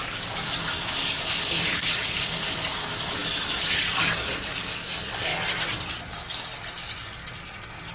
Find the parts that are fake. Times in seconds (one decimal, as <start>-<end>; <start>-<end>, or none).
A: 0.0-5.3

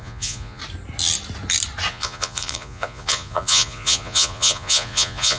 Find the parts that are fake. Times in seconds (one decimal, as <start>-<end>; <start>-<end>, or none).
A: 0.0-0.6; 1.9-5.4

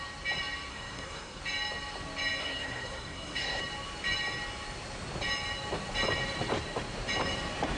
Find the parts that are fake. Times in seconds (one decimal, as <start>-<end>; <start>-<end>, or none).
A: 0.7-1.4; 2.4-3.6

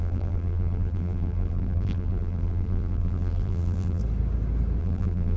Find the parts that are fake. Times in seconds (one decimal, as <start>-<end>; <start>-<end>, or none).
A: 0.0-4.0; 4.8-5.4

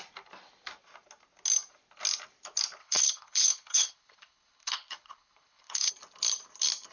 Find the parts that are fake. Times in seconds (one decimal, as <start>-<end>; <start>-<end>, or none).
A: 2.8-5.9

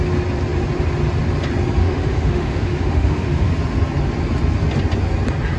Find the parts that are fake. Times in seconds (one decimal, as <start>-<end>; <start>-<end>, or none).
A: 1.8-3.5